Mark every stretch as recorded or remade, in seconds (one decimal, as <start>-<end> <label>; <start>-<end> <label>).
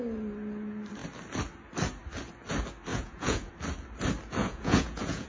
0.0-2.9 recorded; 2.9-3.5 remade; 3.5-4.4 recorded; 4.4-5.3 remade